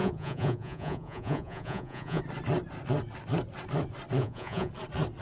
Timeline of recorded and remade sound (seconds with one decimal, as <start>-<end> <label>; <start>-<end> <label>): 0.0-2.2 remade; 2.2-4.2 recorded; 4.2-4.7 remade; 4.7-5.2 recorded